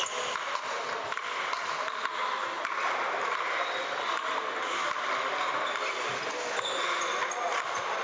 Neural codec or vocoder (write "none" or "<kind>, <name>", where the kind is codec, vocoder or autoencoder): none